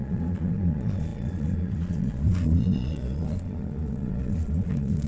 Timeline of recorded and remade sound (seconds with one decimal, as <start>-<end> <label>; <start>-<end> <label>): 0.0-5.1 remade